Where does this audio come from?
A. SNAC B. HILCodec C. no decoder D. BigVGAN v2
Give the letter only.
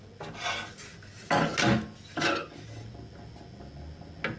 C